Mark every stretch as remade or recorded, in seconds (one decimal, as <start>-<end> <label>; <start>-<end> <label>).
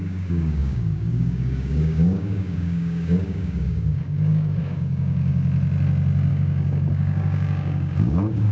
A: 0.0-5.3 remade; 5.3-6.3 recorded; 6.3-8.5 remade